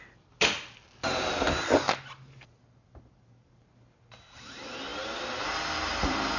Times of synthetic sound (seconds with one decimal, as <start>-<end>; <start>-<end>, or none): none